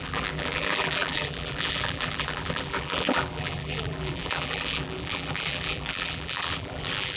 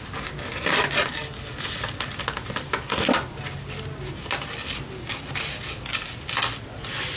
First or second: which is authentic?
second